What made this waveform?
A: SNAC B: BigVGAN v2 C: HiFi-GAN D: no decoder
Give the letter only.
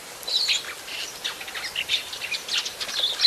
D